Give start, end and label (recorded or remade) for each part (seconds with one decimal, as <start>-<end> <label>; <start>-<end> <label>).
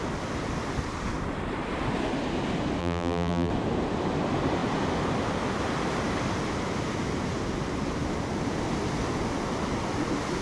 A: 0.0-2.8 recorded; 2.8-3.5 remade; 3.5-10.4 recorded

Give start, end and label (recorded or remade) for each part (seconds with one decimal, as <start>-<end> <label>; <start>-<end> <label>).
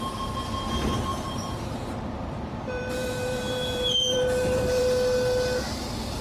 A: 0.0-1.1 recorded; 1.1-4.8 remade; 4.8-6.2 recorded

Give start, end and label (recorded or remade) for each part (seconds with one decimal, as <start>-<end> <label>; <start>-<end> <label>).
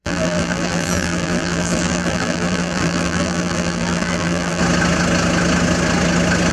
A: 0.0-4.6 remade; 4.6-6.5 recorded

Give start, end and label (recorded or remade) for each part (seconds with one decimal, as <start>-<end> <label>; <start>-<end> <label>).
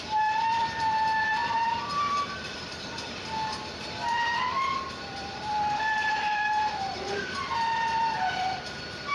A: 0.0-9.1 remade